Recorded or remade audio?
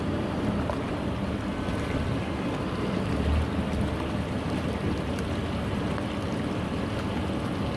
recorded